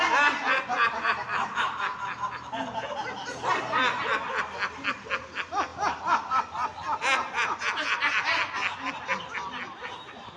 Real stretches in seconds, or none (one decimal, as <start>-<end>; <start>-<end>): 0.0-10.4